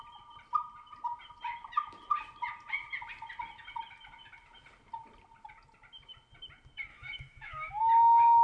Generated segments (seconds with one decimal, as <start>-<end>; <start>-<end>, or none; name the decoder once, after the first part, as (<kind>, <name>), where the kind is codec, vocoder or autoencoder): 6.9-7.8 (autoencoder, DAC-VAE)